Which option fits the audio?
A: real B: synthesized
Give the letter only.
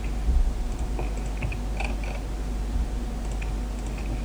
A